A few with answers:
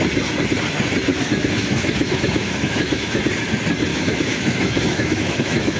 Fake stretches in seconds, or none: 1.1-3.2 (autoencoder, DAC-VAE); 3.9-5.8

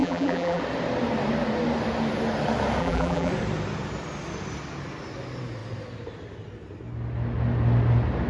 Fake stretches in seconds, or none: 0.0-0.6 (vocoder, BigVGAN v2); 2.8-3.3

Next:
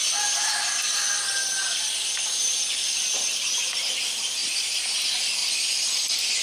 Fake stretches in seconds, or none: 4.4-5.0 (vocoder, BigVGAN v2); 5.4-6.4

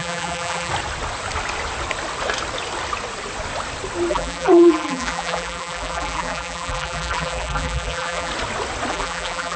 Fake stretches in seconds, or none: 0.0-0.7 (vocoder, BigVGAN v2); 4.1-8.3; 8.9-9.6

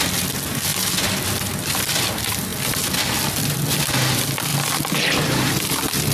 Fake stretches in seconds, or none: none

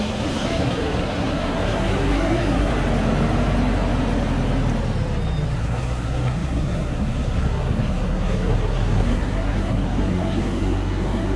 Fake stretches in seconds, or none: 0.0-2.7 (codec, SNAC); 5.6-11.4